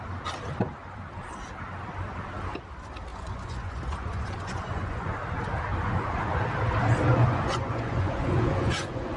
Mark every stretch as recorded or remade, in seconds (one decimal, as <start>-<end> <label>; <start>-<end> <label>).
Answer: 0.0-3.1 recorded; 3.1-5.1 remade; 5.1-5.7 recorded; 5.7-6.4 remade; 6.4-7.1 recorded; 7.1-9.2 remade